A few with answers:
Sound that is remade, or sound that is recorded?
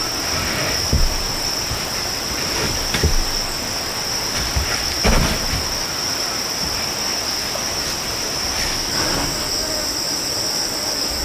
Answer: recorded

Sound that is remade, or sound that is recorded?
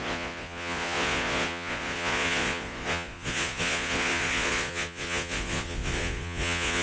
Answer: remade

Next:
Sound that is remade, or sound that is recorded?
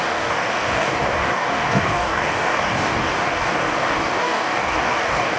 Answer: remade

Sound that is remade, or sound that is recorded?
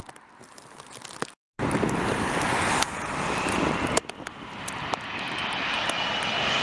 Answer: recorded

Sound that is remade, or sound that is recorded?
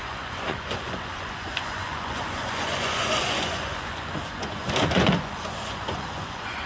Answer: remade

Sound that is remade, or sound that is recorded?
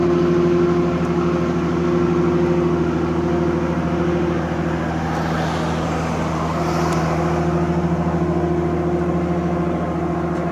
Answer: recorded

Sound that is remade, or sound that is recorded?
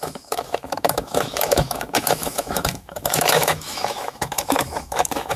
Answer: remade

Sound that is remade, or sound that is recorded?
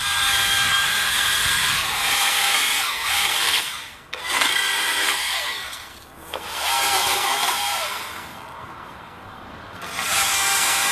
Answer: remade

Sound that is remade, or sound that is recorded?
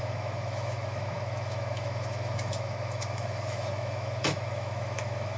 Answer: remade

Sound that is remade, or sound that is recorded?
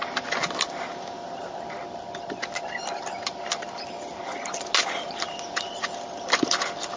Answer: recorded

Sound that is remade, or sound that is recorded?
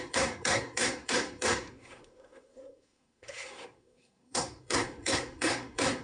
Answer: remade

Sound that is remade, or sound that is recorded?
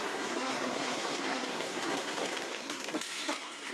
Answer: remade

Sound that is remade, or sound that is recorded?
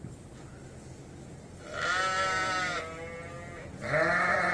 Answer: recorded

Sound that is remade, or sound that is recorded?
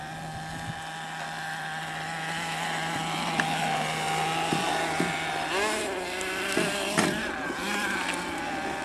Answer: recorded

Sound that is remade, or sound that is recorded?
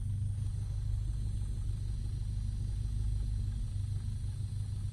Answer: recorded